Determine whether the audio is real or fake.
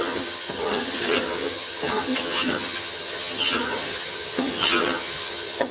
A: fake